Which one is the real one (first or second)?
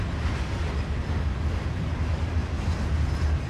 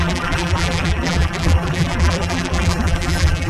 first